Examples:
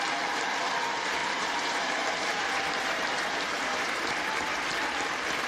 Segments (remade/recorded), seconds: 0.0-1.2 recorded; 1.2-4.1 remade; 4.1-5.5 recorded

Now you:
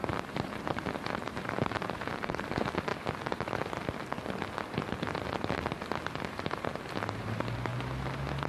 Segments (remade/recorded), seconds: 0.0-2.9 remade; 2.9-6.3 recorded; 6.3-6.7 remade; 6.7-7.2 recorded; 7.2-7.7 remade; 7.7-8.5 recorded

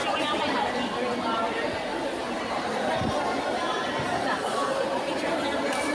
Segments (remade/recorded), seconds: 0.0-0.7 remade; 0.7-1.9 recorded; 1.9-5.4 remade; 5.4-5.9 recorded

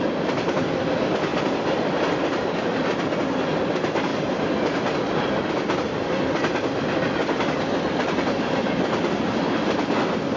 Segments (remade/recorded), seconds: 0.0-10.4 remade

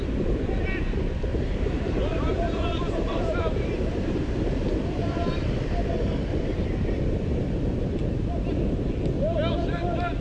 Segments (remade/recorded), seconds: 0.0-1.3 recorded; 1.3-5.3 remade; 5.3-8.0 recorded; 8.0-8.5 remade; 8.5-10.2 recorded